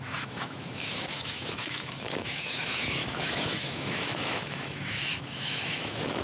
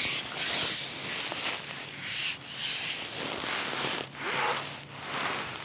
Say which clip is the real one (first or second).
second